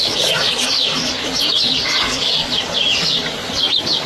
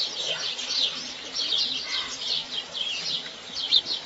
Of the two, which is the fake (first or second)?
first